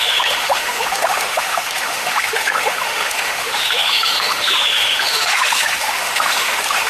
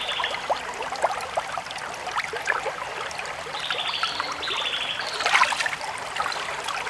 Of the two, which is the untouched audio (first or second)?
second